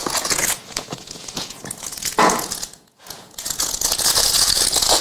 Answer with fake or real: fake